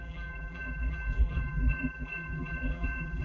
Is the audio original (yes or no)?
no